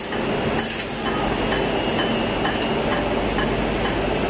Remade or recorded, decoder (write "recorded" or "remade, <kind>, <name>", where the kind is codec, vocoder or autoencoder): recorded